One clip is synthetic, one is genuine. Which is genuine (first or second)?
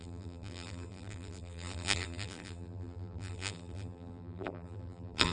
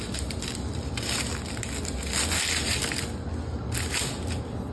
second